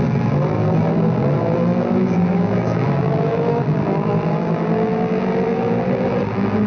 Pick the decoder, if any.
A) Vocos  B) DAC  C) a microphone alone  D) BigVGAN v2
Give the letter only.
D